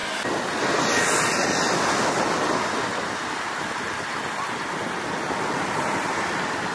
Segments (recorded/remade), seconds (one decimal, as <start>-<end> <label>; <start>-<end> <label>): 0.0-2.9 recorded; 2.9-4.5 remade; 4.5-6.7 recorded